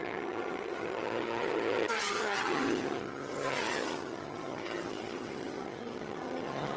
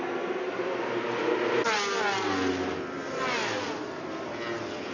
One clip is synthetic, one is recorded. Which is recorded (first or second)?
second